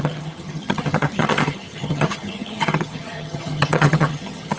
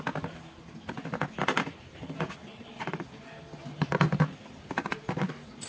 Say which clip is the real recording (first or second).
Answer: second